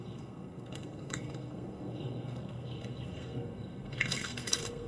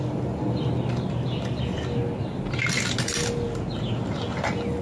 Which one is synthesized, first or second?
first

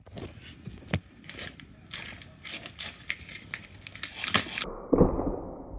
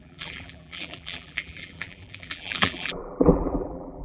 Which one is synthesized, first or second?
second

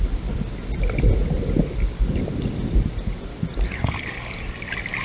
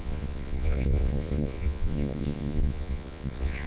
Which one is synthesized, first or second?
second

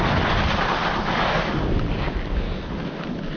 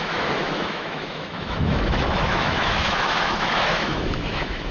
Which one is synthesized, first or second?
second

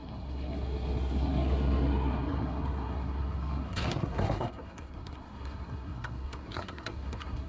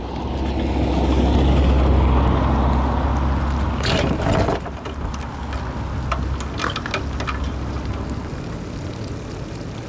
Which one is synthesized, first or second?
first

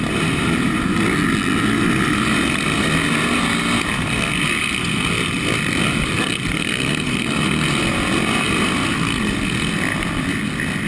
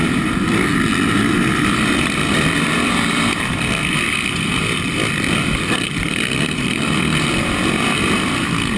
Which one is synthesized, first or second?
second